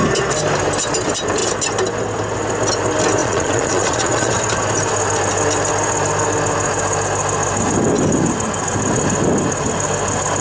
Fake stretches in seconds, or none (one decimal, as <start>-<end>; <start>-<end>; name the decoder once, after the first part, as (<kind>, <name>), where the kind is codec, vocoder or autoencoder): 3.2-4.3 (vocoder, Vocos)